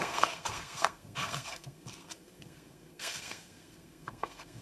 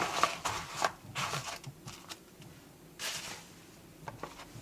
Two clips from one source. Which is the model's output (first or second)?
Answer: first